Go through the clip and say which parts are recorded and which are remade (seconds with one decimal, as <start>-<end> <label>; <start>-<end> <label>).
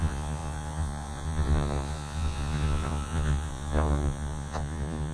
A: 0.0-5.1 remade